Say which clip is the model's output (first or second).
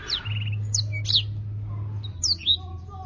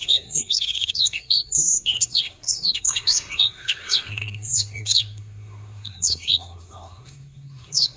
second